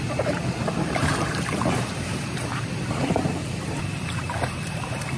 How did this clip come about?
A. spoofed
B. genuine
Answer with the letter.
A